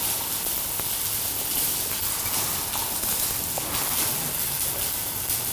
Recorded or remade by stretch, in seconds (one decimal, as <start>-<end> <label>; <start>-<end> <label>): 0.0-5.5 recorded